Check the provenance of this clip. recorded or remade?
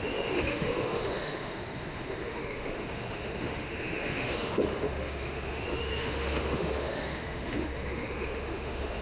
remade